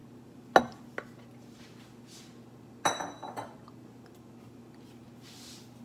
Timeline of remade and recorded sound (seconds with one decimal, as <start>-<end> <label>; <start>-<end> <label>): 0.0-5.8 recorded